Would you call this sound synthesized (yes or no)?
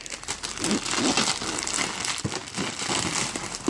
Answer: no